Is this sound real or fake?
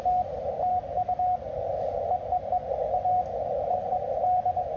real